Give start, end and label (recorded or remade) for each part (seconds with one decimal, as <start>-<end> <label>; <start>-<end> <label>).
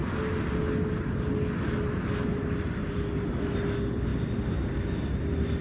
0.0-5.6 recorded